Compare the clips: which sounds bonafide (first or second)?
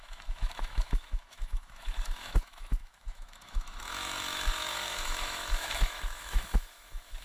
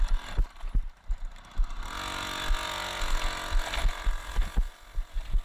second